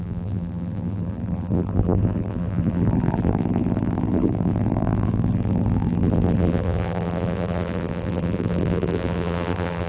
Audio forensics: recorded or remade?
remade